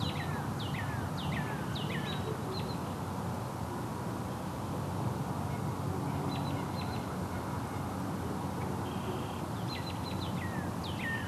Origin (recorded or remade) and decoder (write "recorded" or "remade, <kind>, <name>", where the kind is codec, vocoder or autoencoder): recorded